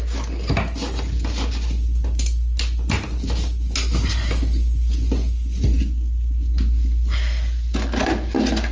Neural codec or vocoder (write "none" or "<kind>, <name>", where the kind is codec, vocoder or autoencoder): none